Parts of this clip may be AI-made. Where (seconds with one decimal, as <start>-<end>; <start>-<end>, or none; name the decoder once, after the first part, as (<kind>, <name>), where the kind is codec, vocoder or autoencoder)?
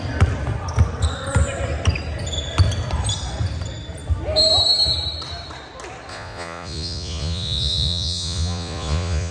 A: 6.1-9.3 (vocoder, Vocos)